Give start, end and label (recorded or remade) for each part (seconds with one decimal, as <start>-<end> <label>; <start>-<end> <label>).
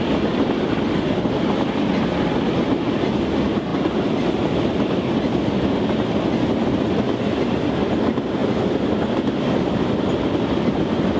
0.0-11.2 recorded